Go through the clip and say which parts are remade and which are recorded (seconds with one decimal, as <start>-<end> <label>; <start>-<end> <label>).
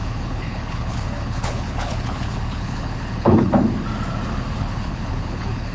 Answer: 0.0-3.5 remade; 3.5-4.6 recorded; 4.6-5.7 remade